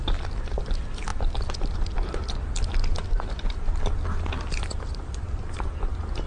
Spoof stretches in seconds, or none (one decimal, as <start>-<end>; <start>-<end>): none